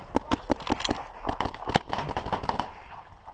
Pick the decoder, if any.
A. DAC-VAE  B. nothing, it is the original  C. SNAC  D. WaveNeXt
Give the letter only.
B